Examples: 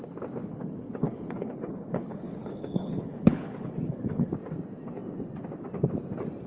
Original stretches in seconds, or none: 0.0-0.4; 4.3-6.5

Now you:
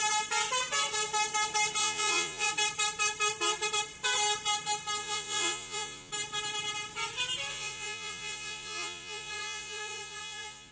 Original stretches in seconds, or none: 0.0-1.8; 2.5-5.0; 6.1-7.5

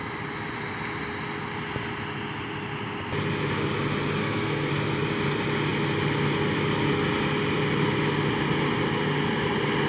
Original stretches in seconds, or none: 0.0-4.2; 4.7-9.9

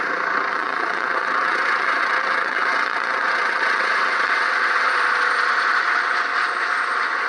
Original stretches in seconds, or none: 0.0-0.5; 4.9-7.3

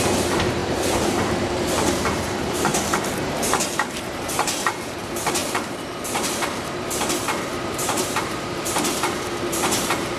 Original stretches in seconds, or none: none

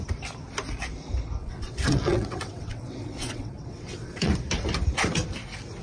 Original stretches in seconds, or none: 0.0-1.4; 4.3-5.8